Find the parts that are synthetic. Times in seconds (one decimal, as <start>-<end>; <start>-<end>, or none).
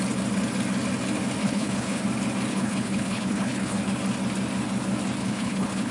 1.4-2.0; 2.5-3.8; 5.2-5.9